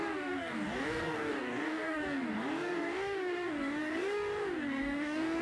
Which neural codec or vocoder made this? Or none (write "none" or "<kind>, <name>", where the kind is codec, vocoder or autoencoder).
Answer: codec, DAC